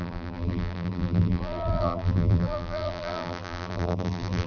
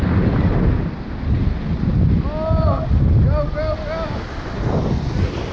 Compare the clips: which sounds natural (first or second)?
second